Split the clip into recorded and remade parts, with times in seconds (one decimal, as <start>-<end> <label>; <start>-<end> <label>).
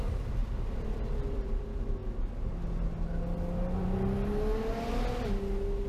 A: 0.0-0.4 recorded; 0.4-1.6 remade; 1.6-5.9 recorded